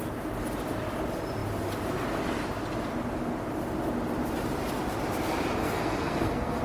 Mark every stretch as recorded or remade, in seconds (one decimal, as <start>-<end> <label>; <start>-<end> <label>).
0.0-5.6 recorded; 5.6-6.6 remade